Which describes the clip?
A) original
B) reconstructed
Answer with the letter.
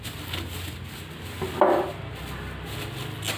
A